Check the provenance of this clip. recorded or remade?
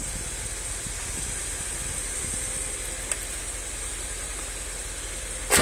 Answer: recorded